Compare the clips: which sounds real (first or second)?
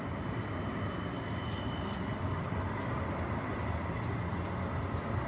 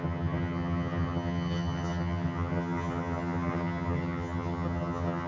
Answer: first